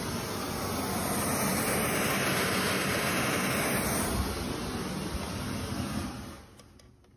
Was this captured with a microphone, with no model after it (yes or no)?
yes